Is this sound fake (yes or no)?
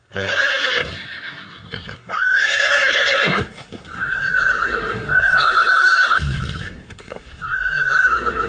yes